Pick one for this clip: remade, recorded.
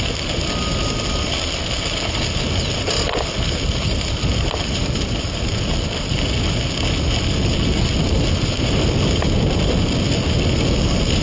recorded